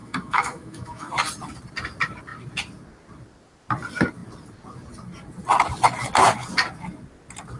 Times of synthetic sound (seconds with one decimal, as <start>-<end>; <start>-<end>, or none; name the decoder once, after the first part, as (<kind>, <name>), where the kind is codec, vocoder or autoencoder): 0.0-1.1 (autoencoder, DAC-VAE)